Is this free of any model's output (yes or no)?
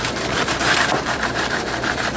no